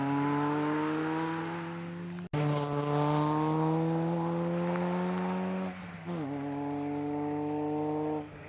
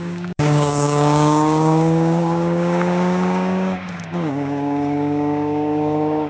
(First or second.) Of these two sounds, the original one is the first